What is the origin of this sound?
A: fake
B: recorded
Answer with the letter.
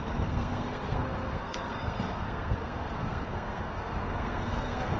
A